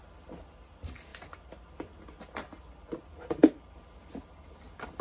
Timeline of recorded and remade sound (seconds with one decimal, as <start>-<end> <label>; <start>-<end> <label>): 0.0-5.0 recorded